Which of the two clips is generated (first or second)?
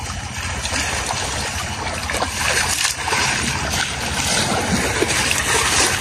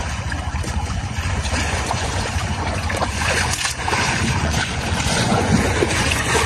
second